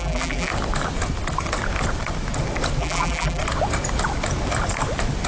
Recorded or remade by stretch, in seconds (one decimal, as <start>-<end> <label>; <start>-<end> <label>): 0.0-0.5 remade; 0.5-2.8 recorded; 2.8-3.4 remade; 3.4-5.3 recorded